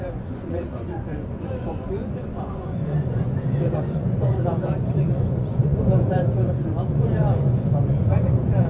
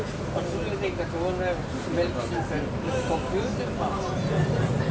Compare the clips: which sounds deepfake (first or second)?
first